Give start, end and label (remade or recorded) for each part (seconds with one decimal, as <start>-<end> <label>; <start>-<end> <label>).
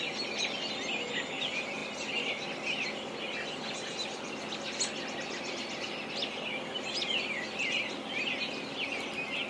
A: 0.0-9.5 recorded